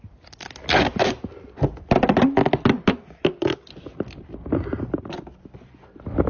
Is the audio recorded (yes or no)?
yes